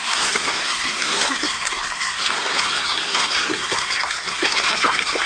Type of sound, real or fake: fake